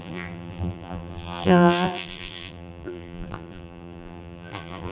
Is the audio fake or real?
fake